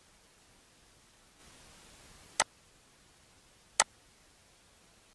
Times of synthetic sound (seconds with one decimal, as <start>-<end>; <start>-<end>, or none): none